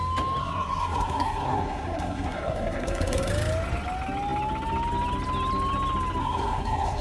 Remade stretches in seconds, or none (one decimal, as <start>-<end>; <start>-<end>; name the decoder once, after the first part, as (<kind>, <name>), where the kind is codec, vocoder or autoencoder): 0.4-3.3 (codec, SNAC); 6.2-7.0